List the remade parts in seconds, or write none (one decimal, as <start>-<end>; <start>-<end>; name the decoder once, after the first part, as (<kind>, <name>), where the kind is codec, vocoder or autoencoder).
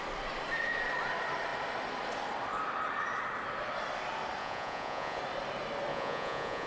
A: 4.4-5.2 (vocoder, Vocos); 5.9-6.7